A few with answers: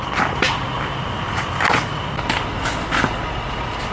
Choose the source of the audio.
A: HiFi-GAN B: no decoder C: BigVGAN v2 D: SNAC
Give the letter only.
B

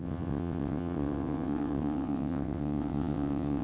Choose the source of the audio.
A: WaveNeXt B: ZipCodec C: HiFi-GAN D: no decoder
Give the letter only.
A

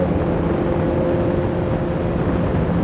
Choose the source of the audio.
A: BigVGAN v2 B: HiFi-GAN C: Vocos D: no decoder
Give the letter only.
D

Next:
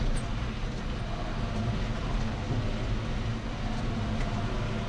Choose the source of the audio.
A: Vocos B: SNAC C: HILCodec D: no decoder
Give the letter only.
D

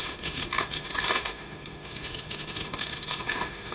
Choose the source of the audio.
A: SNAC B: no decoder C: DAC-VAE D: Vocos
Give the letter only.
C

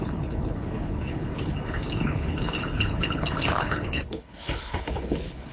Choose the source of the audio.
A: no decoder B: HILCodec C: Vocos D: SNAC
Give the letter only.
B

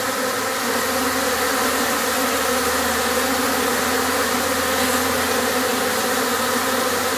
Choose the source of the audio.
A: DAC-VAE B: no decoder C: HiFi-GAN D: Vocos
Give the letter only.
B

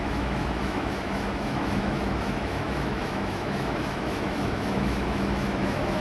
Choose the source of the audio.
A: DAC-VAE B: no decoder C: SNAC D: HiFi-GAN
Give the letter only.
A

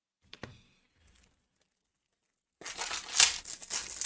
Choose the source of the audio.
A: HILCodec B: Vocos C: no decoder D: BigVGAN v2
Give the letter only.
C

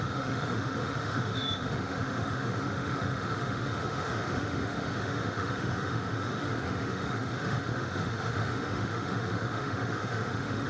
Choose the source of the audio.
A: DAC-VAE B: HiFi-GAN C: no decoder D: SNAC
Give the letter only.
A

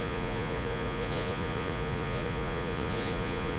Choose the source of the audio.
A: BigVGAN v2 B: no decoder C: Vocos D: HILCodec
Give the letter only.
C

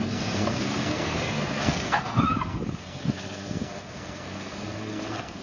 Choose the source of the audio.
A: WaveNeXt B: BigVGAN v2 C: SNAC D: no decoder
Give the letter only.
C